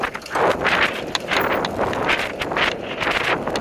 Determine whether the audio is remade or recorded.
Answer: recorded